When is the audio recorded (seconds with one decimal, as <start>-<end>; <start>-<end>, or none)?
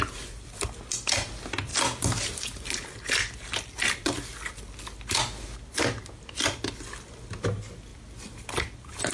0.0-9.1